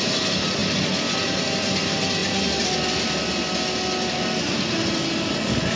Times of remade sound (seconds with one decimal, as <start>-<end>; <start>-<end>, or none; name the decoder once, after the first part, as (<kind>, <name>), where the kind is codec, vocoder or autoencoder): none